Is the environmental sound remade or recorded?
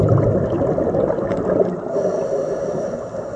recorded